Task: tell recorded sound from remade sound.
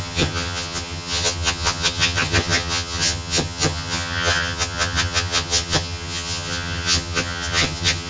remade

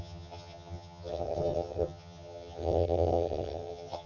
remade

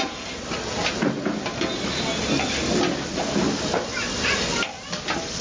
recorded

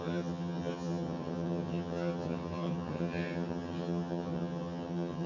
remade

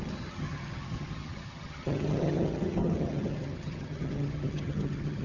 remade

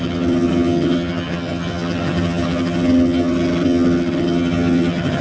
remade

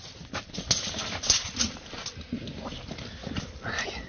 recorded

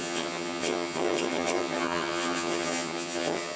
remade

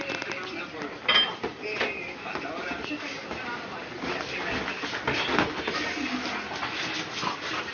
recorded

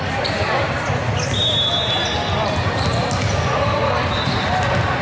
recorded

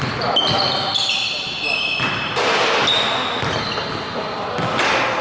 recorded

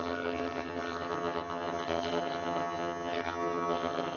remade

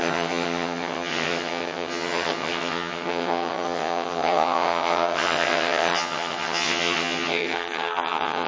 remade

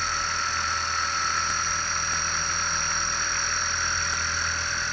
recorded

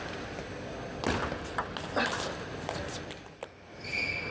recorded